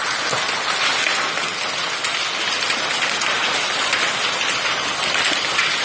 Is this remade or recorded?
recorded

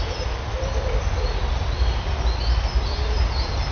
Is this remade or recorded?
recorded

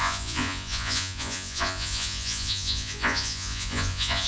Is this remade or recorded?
remade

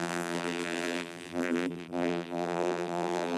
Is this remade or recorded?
remade